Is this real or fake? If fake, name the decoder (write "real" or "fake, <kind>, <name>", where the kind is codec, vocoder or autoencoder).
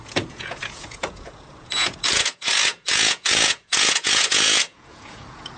fake, vocoder, Vocos